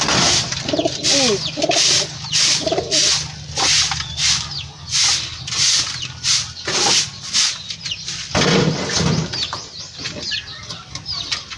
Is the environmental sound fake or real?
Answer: real